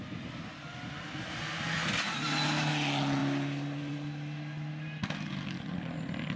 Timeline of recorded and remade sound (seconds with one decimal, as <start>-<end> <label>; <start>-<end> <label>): 0.0-6.4 recorded